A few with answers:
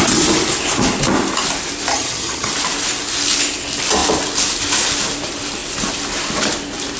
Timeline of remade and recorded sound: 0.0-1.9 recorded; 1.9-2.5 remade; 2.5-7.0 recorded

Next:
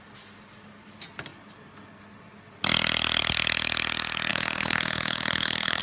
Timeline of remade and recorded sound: 0.0-4.3 recorded; 4.3-5.8 remade

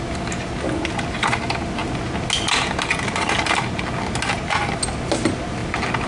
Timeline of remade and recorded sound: 0.0-6.1 recorded

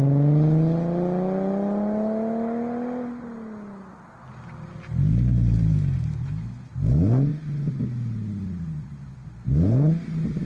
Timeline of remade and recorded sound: 0.0-10.5 recorded